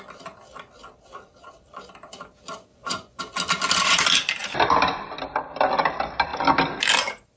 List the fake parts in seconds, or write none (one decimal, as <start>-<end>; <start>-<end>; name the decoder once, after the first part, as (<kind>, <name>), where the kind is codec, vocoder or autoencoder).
2.7-3.2 (vocoder, Vocos)